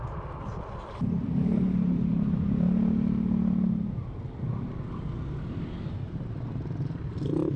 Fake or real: real